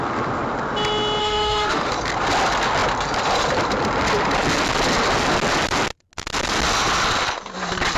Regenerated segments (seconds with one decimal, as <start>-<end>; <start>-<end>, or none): 1.2-1.9